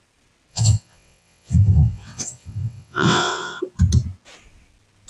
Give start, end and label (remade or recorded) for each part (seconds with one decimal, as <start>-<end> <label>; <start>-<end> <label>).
0.0-0.5 recorded; 0.5-3.6 remade; 3.6-5.1 recorded